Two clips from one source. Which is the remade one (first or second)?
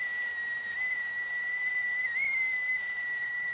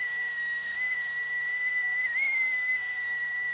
second